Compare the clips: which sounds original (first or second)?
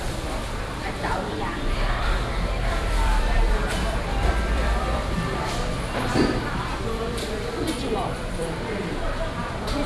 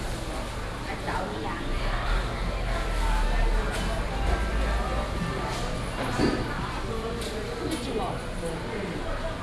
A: second